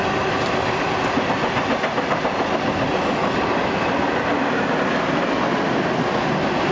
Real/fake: real